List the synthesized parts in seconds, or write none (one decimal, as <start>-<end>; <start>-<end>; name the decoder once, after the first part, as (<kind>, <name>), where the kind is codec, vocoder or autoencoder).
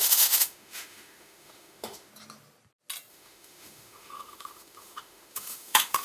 0.0-2.1 (autoencoder, DAC-VAE); 3.1-6.0